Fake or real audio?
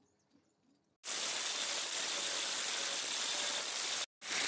real